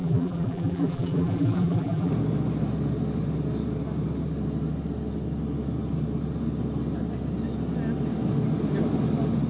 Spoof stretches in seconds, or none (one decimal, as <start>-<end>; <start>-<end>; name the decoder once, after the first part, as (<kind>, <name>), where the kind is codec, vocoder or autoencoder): 0.0-2.1 (vocoder, BigVGAN v2)